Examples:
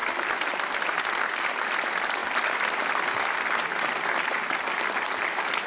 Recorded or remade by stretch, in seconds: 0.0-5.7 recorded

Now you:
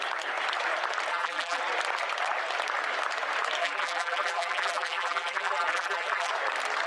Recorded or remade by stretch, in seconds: 0.0-1.1 recorded; 1.1-1.6 remade; 1.6-3.6 recorded; 3.6-6.3 remade; 6.3-6.9 recorded

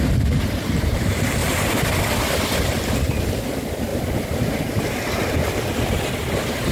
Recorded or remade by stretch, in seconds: 0.0-1.4 remade; 1.4-3.3 recorded; 3.3-3.9 remade; 3.9-6.7 recorded